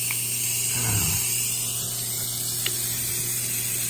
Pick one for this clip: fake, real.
real